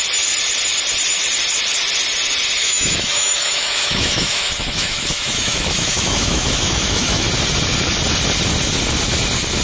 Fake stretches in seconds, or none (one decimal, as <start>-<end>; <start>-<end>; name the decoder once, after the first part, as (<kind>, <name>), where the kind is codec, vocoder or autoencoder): 2.6-7.3 (autoencoder, DAC-VAE)